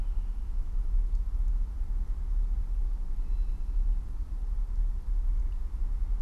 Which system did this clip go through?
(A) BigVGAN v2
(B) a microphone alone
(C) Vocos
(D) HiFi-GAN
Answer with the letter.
B